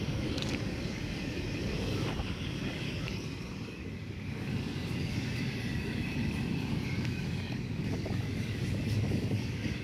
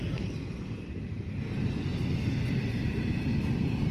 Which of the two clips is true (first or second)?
second